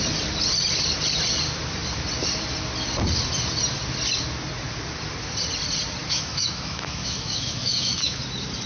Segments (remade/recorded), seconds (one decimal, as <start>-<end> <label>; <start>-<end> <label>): 0.0-6.0 recorded; 6.0-8.2 remade; 8.2-8.7 recorded